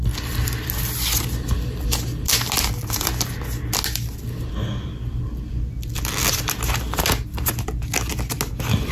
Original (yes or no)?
yes